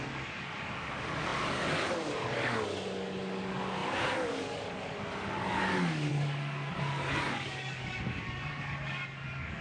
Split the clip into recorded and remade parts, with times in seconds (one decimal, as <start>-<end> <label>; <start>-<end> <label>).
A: 0.0-9.6 remade